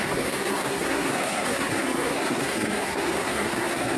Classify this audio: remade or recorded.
remade